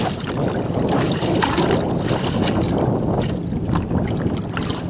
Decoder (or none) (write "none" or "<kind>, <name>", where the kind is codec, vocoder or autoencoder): none